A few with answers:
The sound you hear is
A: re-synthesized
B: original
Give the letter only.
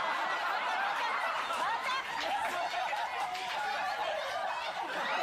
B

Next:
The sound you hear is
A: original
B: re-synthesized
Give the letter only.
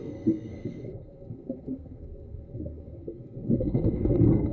B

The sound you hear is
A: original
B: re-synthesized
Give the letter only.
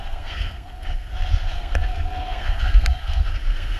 B